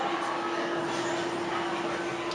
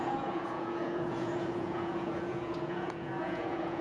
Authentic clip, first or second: first